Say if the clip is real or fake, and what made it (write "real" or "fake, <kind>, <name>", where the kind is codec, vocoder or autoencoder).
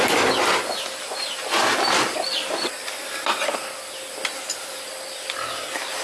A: real